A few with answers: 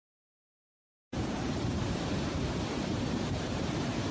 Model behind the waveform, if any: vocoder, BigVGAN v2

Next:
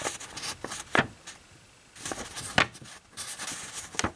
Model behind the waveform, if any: none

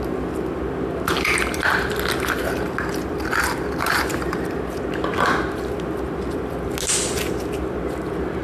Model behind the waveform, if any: none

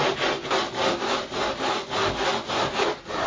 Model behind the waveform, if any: none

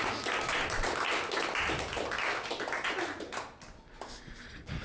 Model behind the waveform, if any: none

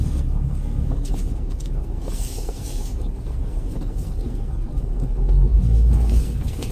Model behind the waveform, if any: codec, SNAC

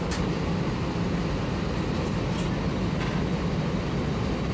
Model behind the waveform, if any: none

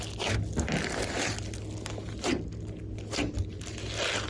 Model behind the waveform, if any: none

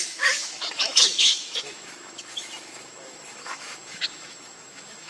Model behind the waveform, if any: autoencoder, DAC-VAE